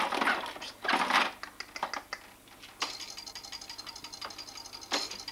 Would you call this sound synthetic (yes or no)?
no